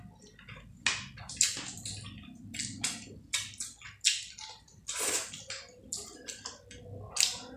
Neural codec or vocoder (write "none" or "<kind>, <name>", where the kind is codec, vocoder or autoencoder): none